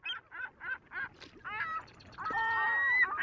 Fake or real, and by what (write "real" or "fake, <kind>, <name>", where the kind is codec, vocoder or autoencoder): real